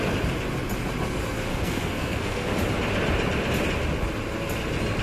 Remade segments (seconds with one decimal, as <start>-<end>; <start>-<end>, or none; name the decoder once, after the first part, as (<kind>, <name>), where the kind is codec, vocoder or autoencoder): 1.5-2.5 (codec, SNAC)